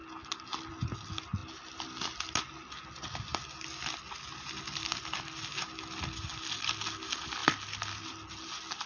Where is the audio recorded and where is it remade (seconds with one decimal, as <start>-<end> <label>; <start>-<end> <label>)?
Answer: 0.0-8.9 recorded